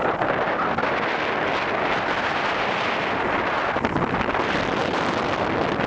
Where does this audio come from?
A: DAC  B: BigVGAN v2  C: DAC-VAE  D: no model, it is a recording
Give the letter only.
D